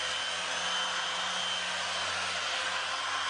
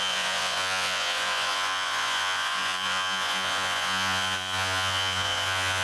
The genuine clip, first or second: first